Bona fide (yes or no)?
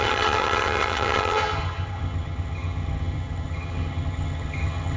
no